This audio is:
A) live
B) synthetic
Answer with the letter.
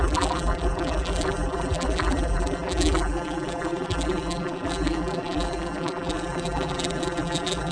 B